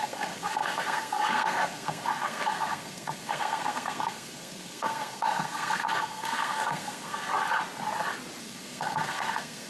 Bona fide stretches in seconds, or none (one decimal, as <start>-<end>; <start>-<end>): 7.3-8.4